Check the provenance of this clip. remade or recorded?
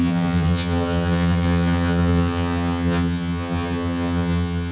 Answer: remade